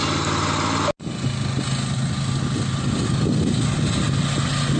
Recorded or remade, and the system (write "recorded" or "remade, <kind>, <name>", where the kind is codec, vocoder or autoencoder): recorded